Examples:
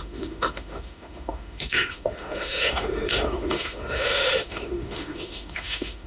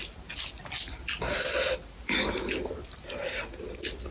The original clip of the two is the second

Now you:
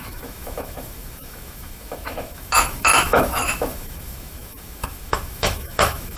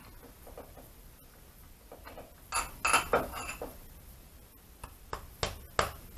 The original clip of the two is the second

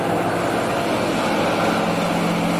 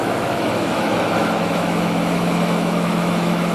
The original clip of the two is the first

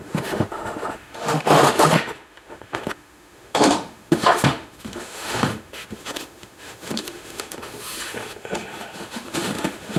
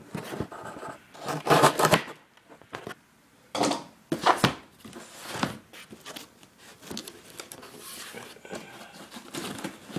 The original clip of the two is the second